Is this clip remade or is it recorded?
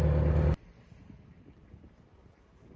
recorded